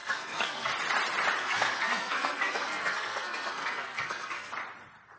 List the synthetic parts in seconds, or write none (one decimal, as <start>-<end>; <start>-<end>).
0.0-0.7; 1.4-4.5